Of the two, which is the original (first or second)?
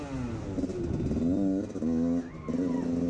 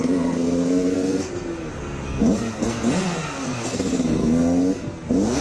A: first